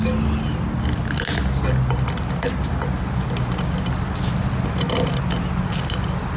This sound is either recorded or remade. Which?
recorded